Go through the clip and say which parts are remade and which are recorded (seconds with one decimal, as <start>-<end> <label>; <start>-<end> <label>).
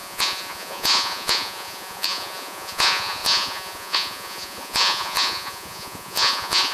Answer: 0.0-6.7 remade